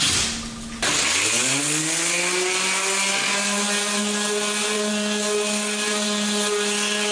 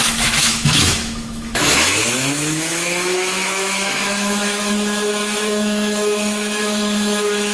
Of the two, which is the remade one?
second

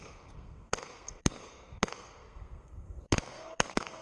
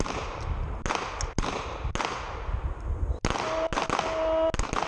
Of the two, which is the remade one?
first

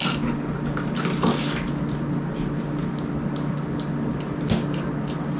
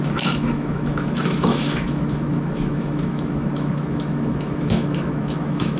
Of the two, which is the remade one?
second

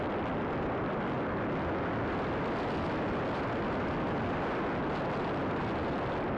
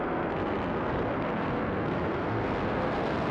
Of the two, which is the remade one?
second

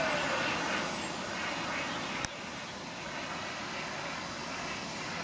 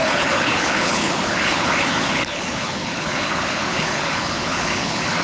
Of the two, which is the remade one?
second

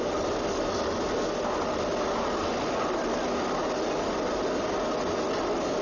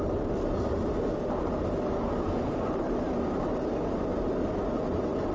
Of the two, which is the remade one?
second